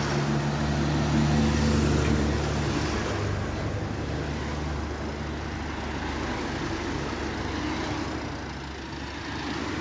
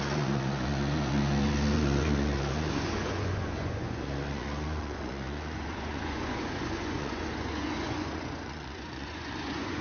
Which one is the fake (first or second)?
second